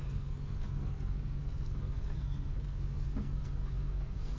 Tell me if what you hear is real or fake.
fake